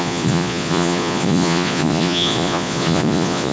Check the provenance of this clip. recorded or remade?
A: remade